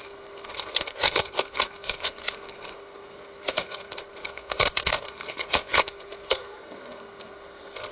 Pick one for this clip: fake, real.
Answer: fake